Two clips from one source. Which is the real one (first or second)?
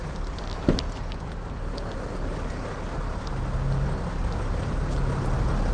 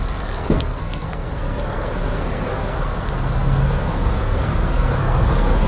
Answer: first